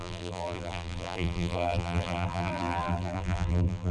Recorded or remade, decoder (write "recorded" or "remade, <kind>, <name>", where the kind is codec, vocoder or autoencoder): remade, vocoder, BigVGAN v2